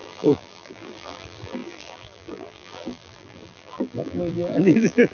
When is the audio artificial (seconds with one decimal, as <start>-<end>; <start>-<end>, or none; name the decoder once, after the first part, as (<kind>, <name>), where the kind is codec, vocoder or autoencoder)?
0.0-5.1 (vocoder, BigVGAN v2)